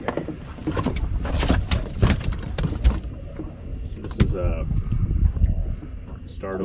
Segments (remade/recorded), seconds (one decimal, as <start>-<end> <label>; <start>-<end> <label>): 0.0-0.6 remade; 0.6-1.6 recorded; 1.6-3.7 remade; 3.7-5.0 recorded; 5.0-5.6 remade; 5.6-6.6 recorded